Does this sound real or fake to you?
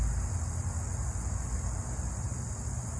real